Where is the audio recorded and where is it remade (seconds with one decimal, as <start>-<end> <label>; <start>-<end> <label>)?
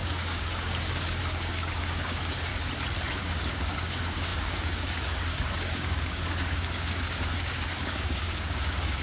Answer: 0.0-2.5 remade; 2.5-3.2 recorded; 3.2-9.0 remade